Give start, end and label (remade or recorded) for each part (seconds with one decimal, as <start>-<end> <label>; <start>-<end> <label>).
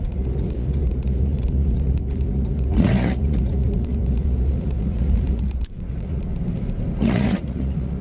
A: 0.0-6.3 remade; 6.3-7.0 recorded; 7.0-8.0 remade